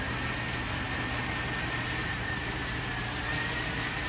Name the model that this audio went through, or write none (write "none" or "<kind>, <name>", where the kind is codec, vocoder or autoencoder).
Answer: vocoder, BigVGAN v2